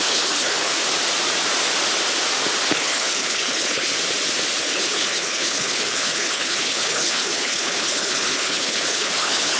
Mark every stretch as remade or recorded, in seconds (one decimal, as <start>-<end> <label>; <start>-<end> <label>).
0.0-0.7 remade; 0.7-2.7 recorded; 2.7-3.9 remade; 3.9-4.6 recorded; 4.6-9.6 remade